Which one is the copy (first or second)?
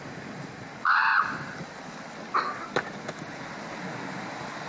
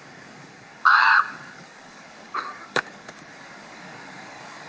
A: second